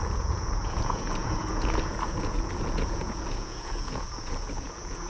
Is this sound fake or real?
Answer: fake